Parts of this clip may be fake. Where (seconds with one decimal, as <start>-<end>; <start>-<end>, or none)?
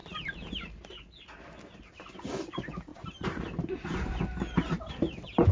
0.0-0.8; 2.9-5.5